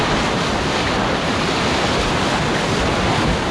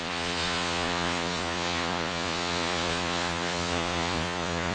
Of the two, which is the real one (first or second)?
first